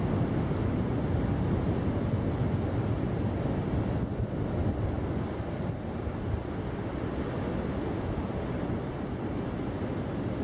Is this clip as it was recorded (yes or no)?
yes